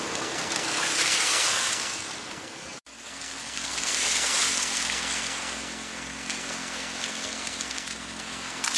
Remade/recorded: remade